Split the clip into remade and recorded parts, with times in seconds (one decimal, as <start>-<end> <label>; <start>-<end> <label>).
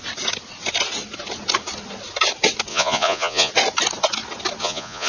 0.0-2.7 recorded; 2.7-3.5 remade; 3.5-4.6 recorded; 4.6-5.1 remade